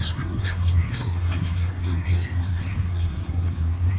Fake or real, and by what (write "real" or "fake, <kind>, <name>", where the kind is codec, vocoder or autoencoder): fake, codec, SNAC